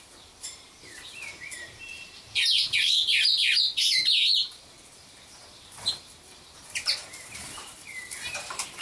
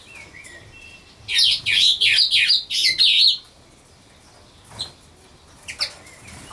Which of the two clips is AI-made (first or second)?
first